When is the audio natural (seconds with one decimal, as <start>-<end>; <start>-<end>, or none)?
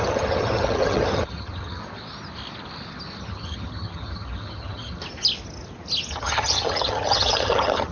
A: 1.8-3.2; 5.0-6.1